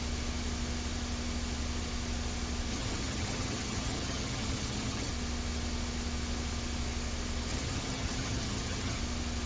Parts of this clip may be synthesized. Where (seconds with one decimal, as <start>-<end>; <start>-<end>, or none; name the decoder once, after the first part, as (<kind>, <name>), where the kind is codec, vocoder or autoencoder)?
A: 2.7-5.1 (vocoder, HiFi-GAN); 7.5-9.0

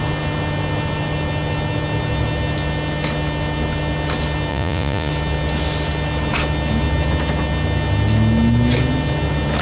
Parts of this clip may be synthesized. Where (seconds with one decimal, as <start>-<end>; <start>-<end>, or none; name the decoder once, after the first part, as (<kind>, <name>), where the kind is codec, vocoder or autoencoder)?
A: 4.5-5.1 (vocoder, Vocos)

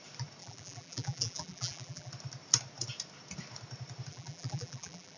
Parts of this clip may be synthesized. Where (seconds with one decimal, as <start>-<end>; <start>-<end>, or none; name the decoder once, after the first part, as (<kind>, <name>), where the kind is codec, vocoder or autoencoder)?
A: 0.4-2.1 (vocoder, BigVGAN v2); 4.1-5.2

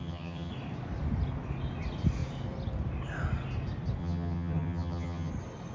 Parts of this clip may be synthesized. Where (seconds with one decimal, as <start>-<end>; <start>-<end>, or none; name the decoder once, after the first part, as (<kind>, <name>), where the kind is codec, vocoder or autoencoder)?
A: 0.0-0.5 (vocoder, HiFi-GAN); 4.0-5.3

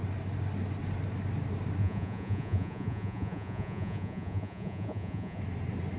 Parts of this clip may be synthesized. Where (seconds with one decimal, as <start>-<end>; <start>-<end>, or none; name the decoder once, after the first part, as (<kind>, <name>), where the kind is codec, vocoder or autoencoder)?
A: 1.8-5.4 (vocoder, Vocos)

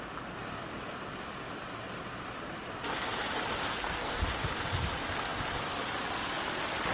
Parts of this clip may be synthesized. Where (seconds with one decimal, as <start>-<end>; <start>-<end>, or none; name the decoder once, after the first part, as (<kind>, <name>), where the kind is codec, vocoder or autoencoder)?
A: 3.6-4.2 (codec, SNAC)